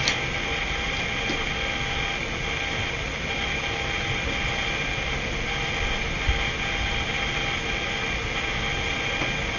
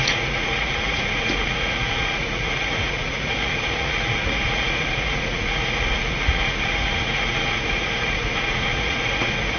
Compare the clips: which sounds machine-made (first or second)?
second